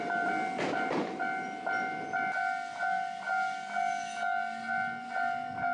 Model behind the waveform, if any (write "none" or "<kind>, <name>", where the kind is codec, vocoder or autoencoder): none